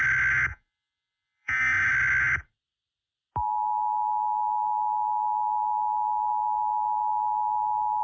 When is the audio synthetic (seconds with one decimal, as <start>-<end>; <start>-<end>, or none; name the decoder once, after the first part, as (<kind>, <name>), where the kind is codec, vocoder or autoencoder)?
0.5-1.6 (vocoder, Vocos)